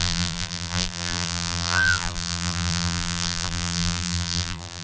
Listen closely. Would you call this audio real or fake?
fake